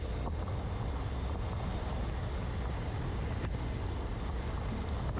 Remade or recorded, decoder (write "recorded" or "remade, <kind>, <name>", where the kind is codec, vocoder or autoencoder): recorded